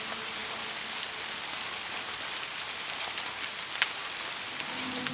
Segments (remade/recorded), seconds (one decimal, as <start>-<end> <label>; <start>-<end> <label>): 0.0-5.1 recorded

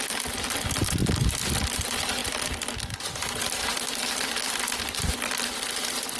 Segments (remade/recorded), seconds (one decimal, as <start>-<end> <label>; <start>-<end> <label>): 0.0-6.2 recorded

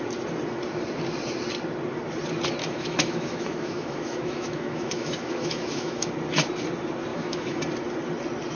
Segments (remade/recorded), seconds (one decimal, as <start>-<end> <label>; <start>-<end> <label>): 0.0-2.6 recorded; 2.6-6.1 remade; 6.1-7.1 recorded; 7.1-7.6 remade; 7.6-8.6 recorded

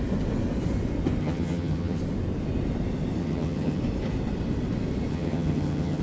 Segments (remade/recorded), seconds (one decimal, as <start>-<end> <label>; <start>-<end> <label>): 0.0-1.2 recorded; 1.2-2.0 remade; 2.0-3.2 recorded; 3.2-3.8 remade; 3.8-5.1 recorded; 5.1-6.0 remade